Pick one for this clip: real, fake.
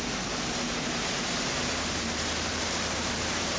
fake